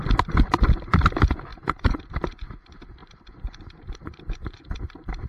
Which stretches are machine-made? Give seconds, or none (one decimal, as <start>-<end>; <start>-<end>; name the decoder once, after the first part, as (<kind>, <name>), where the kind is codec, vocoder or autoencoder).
1.5-2.1 (vocoder, BigVGAN v2); 3.0-4.8